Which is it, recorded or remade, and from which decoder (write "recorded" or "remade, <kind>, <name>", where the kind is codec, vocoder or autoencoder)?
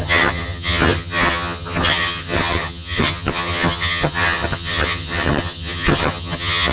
remade, vocoder, HiFi-GAN